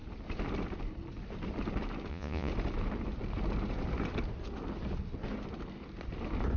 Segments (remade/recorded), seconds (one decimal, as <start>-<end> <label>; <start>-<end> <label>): 0.0-2.1 recorded; 2.1-2.5 remade; 2.5-6.6 recorded